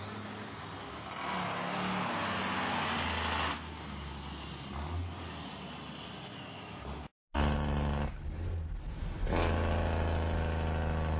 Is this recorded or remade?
recorded